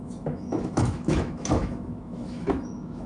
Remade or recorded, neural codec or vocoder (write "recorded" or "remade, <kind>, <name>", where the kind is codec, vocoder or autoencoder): remade, autoencoder, DAC-VAE